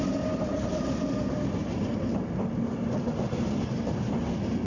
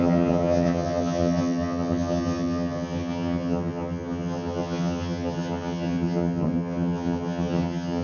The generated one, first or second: second